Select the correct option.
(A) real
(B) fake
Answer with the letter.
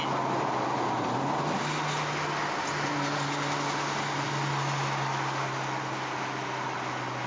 A